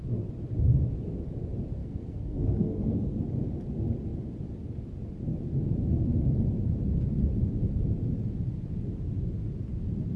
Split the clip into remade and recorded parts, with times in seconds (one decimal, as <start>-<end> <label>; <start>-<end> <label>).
0.0-1.8 recorded; 1.8-3.2 remade; 3.2-10.2 recorded

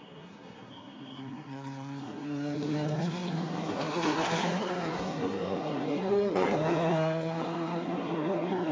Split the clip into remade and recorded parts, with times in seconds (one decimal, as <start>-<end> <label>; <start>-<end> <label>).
0.0-8.7 remade

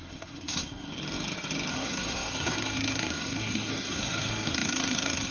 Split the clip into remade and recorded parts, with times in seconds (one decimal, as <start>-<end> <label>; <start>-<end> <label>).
0.0-0.9 remade; 0.9-1.7 recorded; 1.7-5.3 remade

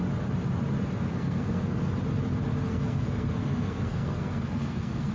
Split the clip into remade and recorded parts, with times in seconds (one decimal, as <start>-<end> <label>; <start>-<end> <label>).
0.0-1.1 recorded; 1.1-1.8 remade; 1.8-2.7 recorded; 2.7-5.1 remade

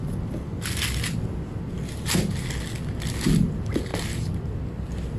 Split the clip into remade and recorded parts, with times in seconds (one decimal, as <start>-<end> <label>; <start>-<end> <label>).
0.0-5.2 recorded

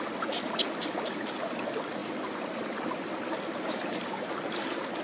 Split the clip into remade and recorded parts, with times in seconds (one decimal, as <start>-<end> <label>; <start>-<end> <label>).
0.0-5.0 recorded